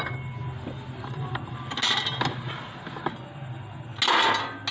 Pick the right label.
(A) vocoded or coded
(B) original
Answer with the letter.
B